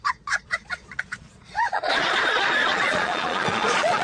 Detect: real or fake fake